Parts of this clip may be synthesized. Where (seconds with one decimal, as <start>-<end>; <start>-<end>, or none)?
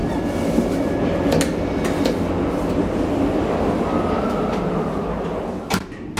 none